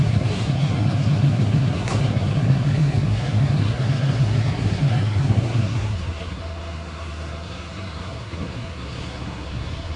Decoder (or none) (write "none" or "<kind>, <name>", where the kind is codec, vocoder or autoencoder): codec, SNAC